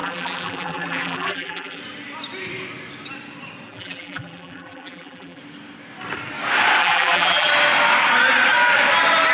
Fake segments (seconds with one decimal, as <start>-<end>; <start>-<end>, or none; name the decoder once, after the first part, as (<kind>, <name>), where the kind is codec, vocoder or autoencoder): 0.0-1.8 (vocoder, BigVGAN v2); 3.7-5.4; 6.8-7.5